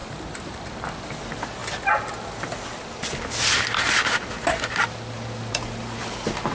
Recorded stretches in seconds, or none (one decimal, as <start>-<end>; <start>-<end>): 0.6-6.5